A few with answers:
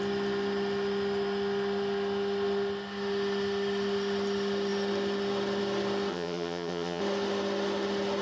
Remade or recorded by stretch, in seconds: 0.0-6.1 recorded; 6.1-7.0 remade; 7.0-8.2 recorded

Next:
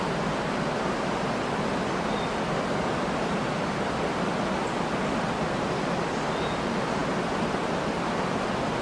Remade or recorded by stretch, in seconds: 0.0-8.8 recorded